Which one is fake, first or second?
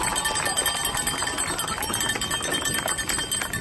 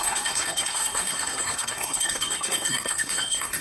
second